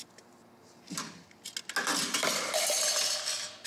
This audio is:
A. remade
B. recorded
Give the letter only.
B